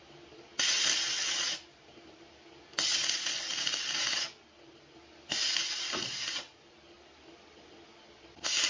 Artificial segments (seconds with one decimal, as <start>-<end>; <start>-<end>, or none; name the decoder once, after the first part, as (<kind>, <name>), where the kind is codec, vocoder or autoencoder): none